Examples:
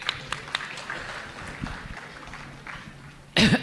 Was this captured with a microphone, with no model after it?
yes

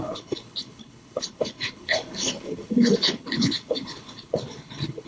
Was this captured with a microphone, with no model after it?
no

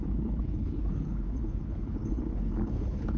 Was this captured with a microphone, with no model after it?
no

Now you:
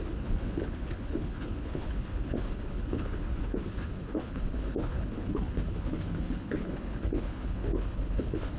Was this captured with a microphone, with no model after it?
no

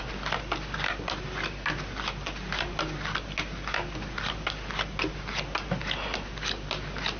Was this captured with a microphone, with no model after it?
yes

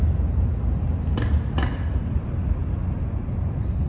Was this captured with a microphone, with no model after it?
yes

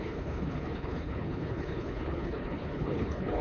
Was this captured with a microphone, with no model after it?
no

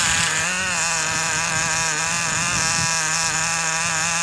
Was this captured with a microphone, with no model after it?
yes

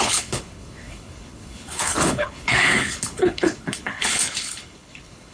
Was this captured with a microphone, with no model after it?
no